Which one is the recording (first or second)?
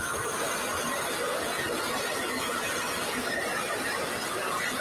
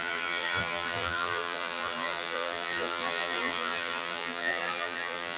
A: first